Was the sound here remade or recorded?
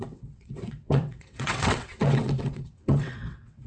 remade